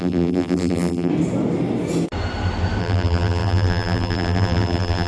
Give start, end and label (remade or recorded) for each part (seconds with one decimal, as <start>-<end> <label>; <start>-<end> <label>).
0.0-1.1 remade; 1.1-2.8 recorded; 2.8-5.1 remade